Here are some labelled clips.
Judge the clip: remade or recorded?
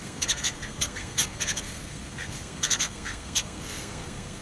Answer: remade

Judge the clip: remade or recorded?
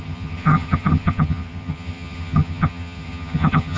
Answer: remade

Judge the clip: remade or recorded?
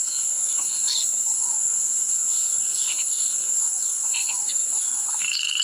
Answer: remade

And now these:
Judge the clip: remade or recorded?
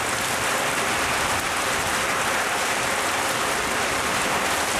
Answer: recorded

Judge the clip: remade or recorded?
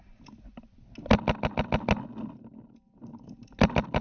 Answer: recorded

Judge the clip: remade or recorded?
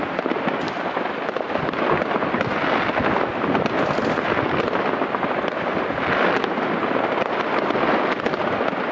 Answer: recorded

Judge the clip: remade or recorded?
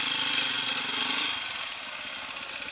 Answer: recorded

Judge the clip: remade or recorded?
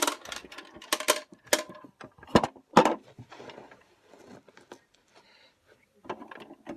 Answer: recorded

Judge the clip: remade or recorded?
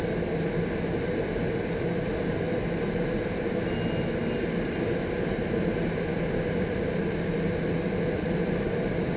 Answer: recorded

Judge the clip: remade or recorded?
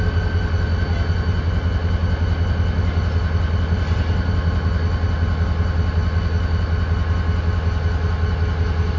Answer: recorded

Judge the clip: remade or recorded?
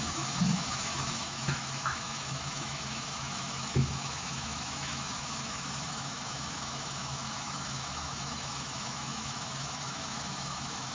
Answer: remade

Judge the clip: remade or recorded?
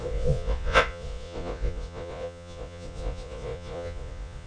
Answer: remade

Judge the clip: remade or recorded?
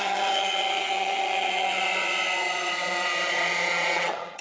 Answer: remade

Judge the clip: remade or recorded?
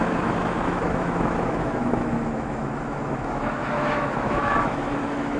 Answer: remade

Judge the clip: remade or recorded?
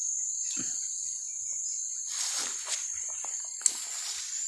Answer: recorded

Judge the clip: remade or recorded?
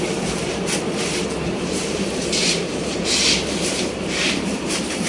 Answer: remade